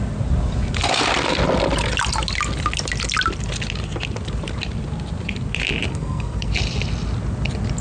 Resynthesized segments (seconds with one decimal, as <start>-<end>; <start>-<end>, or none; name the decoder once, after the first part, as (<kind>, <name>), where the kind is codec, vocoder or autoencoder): 5.9-6.5 (codec, SNAC)